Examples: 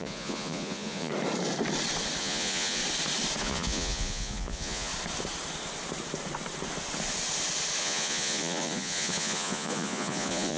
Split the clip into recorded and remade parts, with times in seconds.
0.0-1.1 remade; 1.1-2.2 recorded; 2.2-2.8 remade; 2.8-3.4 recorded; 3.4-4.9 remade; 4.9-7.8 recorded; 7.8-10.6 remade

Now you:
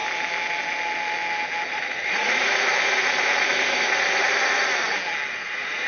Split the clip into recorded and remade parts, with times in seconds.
0.0-1.7 recorded; 1.7-2.7 remade; 2.7-5.3 recorded; 5.3-5.9 remade

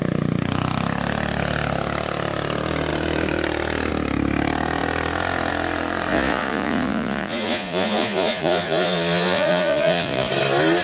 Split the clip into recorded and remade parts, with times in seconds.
0.0-6.1 recorded; 6.1-10.3 remade; 10.3-10.8 recorded